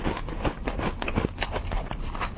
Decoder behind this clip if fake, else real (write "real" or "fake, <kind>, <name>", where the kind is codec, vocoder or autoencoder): real